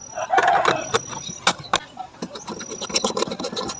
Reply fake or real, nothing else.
real